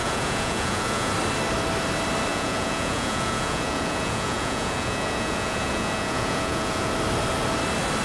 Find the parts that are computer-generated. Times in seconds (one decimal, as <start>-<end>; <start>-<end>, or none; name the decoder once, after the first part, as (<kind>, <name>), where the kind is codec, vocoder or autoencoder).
0.0-1.1 (vocoder, Vocos); 2.3-6.9